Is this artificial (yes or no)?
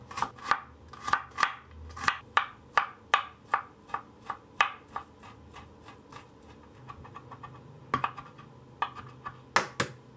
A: no